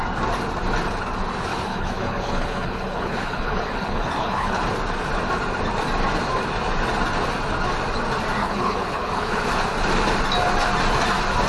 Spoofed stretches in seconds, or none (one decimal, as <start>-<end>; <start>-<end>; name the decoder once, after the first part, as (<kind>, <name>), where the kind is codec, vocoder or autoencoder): 1.5-4.6 (codec, HILCodec); 8.4-9.4